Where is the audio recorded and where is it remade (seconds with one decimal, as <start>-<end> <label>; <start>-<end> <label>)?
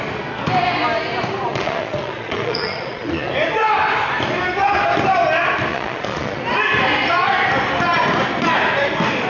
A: 0.0-1.5 recorded; 1.5-3.3 remade; 3.3-5.7 recorded; 5.7-6.4 remade; 6.4-9.3 recorded